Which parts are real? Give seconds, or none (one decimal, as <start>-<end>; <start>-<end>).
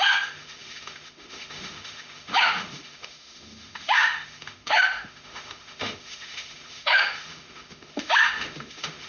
none